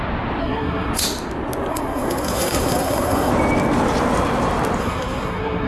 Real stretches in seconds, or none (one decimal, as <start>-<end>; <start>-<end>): 0.0-0.4; 0.9-1.7; 3.3-4.8

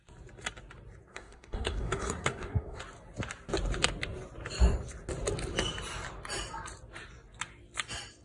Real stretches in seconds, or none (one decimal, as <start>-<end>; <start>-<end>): 0.0-1.1; 2.8-8.2

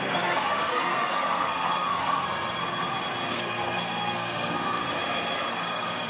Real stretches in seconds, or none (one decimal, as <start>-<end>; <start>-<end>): 2.6-3.3; 4.8-5.5